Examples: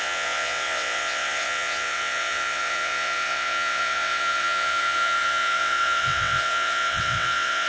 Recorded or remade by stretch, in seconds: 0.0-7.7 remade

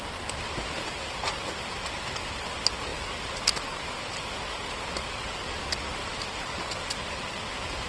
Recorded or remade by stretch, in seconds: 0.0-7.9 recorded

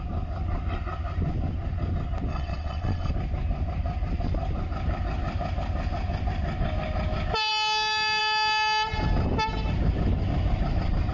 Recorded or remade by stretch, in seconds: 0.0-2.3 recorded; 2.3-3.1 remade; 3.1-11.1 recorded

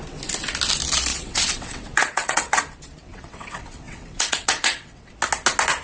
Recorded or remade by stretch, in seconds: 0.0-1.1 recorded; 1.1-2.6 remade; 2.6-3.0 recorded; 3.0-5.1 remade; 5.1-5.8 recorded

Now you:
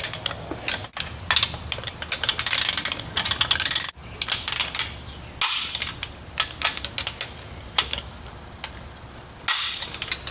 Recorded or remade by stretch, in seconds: 0.0-10.3 recorded

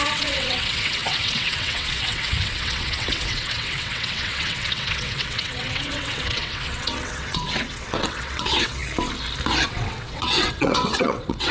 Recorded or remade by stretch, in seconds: 0.0-8.8 remade; 8.8-9.6 recorded; 9.6-11.5 remade